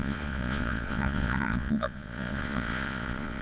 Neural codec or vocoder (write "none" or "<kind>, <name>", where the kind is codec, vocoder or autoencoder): vocoder, Vocos